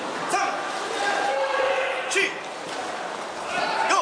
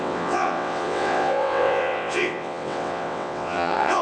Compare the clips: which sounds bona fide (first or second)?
first